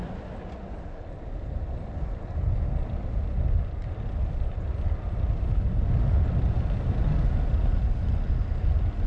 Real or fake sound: real